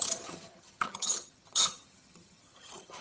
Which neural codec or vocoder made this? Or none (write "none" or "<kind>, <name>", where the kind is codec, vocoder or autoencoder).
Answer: vocoder, HiFi-GAN